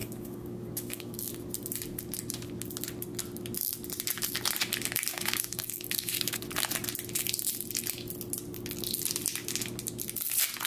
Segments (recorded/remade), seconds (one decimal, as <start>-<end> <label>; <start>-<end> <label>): 0.0-1.3 remade; 1.3-5.1 recorded; 5.1-6.4 remade; 6.4-10.7 recorded